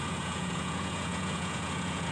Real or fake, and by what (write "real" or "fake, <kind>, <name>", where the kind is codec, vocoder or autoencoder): fake, vocoder, Vocos